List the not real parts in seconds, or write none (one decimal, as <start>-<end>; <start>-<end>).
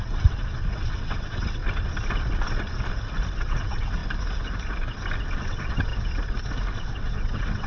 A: 0.0-1.6; 3.3-4.0; 5.3-5.9; 6.8-7.7